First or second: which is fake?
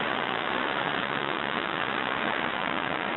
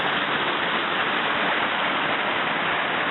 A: first